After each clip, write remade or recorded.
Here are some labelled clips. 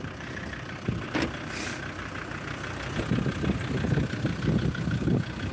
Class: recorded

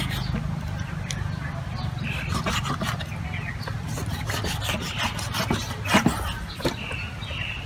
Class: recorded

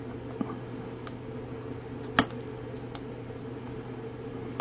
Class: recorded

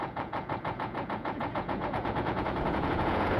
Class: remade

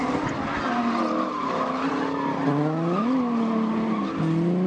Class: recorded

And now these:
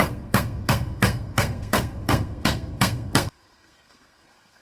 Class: remade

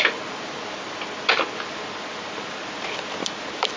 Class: recorded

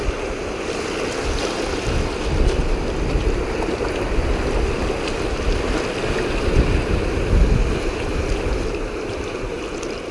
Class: recorded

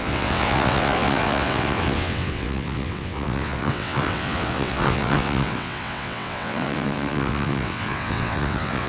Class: remade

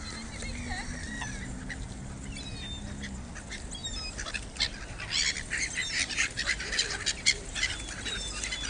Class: recorded